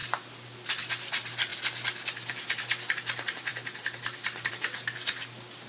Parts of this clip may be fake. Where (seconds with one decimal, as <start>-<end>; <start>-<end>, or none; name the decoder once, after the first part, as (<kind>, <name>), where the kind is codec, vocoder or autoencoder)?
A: none